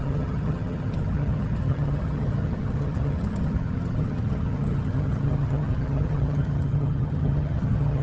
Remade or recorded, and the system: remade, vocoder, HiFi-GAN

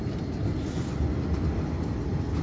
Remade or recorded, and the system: recorded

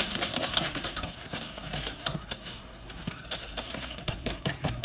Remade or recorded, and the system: remade, codec, SNAC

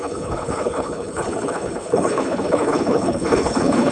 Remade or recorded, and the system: remade, codec, HILCodec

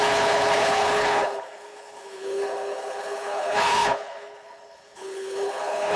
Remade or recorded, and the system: remade, codec, HILCodec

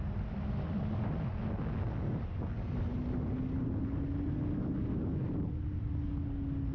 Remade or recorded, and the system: recorded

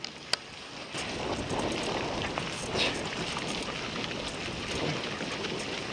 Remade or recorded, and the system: recorded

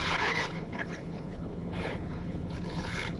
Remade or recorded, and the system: remade, codec, HILCodec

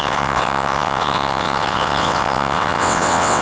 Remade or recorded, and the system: remade, vocoder, WaveNeXt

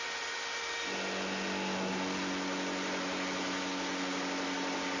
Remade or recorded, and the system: recorded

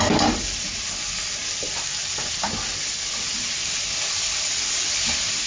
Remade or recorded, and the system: recorded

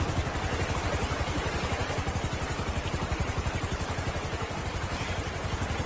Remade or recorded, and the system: recorded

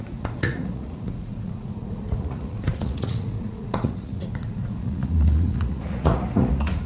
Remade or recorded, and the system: remade, vocoder, Vocos